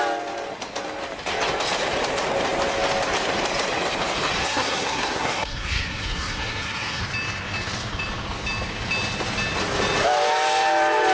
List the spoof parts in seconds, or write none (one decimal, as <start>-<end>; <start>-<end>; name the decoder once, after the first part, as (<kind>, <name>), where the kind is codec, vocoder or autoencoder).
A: 4.4-7.0 (codec, SNAC)